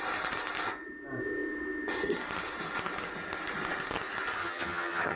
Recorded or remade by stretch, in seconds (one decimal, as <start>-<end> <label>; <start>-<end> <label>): 0.0-4.4 recorded; 4.4-5.2 remade